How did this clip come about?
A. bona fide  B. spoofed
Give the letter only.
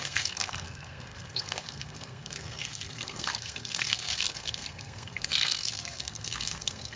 B